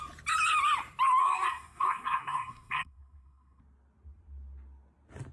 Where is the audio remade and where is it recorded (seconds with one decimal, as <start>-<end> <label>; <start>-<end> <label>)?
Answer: 0.0-1.2 recorded; 1.2-3.6 remade; 3.6-5.3 recorded